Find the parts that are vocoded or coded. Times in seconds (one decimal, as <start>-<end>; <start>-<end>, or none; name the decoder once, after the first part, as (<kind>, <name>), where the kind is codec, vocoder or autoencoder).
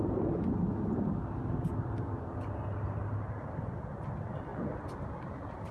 none